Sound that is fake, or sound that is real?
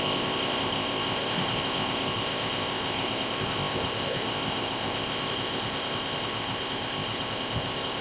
fake